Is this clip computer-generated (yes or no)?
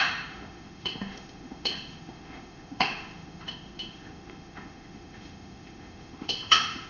yes